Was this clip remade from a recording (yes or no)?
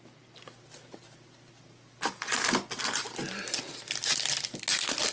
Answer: no